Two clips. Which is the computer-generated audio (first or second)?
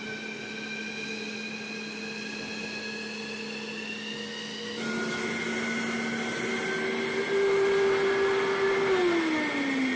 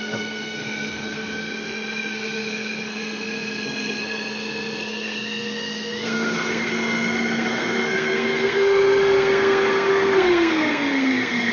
second